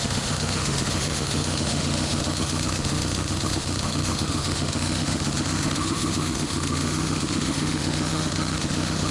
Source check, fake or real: fake